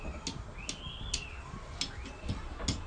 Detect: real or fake real